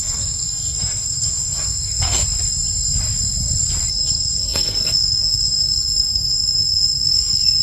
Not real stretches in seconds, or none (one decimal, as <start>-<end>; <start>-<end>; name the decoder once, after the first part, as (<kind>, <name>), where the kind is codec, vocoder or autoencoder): 0.0-2.2 (codec, SNAC); 4.0-7.6